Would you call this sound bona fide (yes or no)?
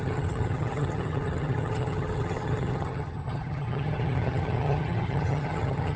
no